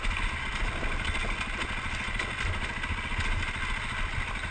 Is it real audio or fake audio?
real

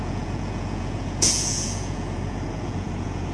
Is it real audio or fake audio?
fake